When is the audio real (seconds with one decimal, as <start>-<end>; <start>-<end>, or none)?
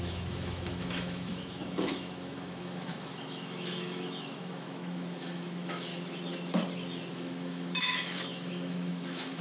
5.9-7.1